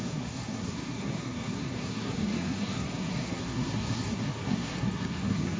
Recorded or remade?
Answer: remade